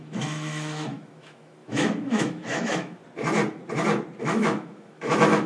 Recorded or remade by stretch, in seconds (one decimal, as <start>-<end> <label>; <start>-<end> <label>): 0.0-3.0 remade; 3.0-4.2 recorded; 4.2-5.5 remade